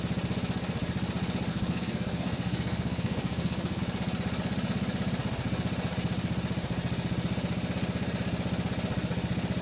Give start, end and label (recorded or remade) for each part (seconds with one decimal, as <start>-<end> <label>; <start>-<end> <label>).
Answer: 0.0-1.5 recorded; 1.5-3.8 remade; 3.8-9.6 recorded

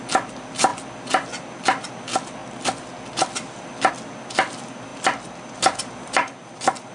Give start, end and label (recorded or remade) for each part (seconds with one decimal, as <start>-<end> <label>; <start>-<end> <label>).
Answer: 0.0-6.9 recorded

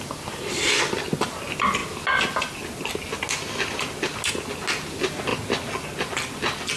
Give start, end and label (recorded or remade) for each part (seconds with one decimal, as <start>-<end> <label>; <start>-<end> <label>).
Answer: 0.0-6.8 recorded

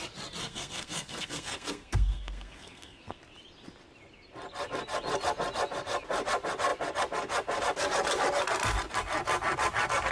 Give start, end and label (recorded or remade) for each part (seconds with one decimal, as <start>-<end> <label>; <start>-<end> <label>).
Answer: 0.0-0.4 recorded; 0.4-3.2 remade; 3.2-10.1 recorded

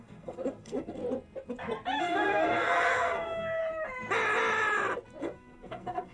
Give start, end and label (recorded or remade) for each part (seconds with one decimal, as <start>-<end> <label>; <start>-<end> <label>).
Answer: 0.0-1.0 remade; 1.0-2.0 recorded; 2.0-3.6 remade; 3.6-5.2 recorded; 5.2-6.1 remade